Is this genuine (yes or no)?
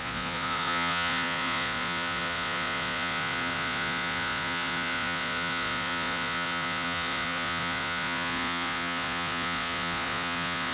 no